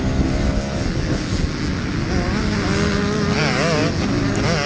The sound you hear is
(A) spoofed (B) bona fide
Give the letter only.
B